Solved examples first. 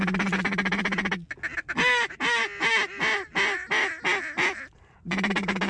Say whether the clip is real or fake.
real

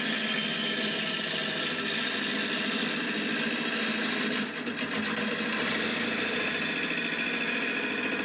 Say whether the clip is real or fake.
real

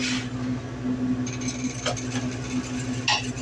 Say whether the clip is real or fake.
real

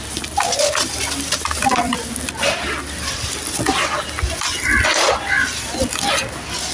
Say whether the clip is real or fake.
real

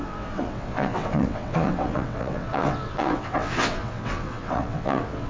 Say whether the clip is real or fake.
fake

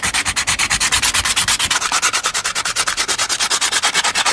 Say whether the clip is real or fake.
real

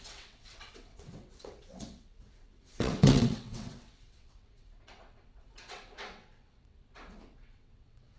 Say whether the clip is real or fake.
fake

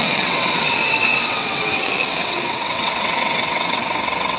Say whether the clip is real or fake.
fake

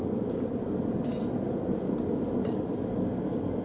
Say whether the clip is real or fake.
real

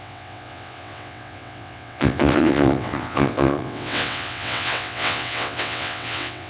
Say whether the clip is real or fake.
fake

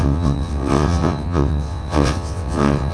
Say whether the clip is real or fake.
fake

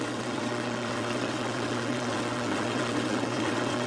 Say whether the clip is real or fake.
fake